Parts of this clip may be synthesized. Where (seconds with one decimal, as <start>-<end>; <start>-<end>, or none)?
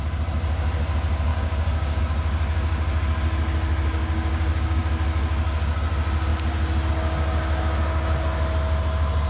1.3-2.0; 3.9-4.8